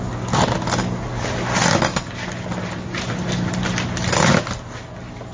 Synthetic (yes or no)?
no